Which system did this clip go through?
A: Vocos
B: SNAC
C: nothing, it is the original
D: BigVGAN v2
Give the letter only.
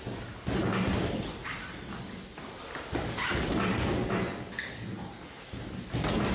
C